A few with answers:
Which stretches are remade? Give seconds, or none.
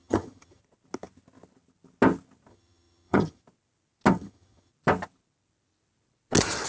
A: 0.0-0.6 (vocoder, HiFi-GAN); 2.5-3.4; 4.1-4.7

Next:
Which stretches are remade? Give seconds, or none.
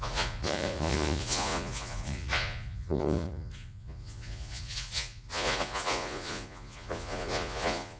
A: 0.0-8.0 (vocoder, Vocos)